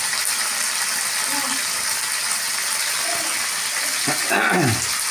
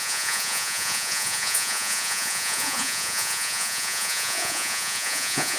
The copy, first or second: second